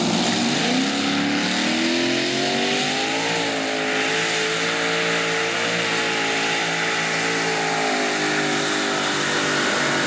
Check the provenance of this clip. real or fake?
real